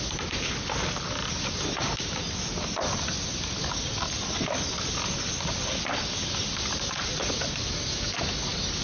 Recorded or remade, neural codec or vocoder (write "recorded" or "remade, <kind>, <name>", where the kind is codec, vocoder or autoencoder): recorded